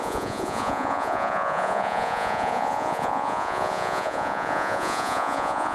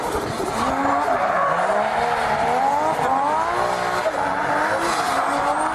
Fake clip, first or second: first